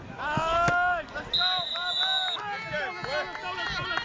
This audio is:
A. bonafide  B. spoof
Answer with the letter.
A